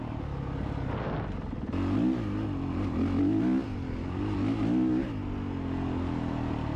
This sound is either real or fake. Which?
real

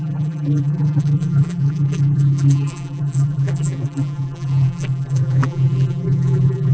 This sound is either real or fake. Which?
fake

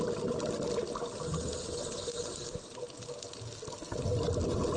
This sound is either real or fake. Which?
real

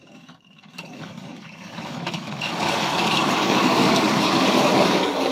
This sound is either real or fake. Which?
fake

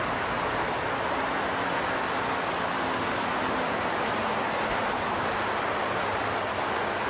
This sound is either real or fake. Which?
real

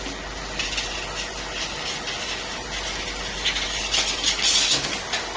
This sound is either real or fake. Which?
real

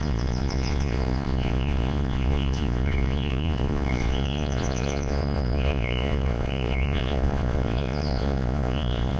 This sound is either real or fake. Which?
fake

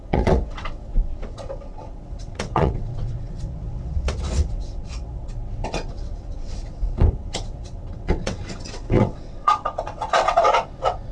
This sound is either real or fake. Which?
fake